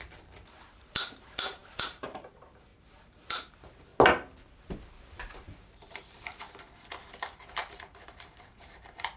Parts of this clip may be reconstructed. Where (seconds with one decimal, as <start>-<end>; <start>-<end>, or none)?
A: 0.0-3.9; 4.8-6.3; 7.3-9.2